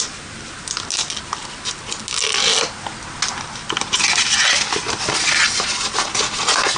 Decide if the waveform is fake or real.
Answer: real